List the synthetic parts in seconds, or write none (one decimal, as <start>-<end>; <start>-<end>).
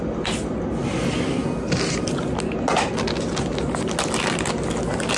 none